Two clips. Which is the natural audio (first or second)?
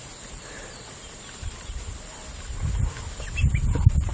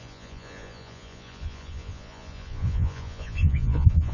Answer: first